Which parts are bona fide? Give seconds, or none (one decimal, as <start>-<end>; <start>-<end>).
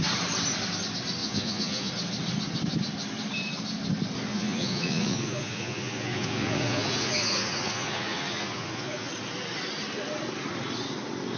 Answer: 0.0-1.2; 1.9-4.3; 9.1-11.4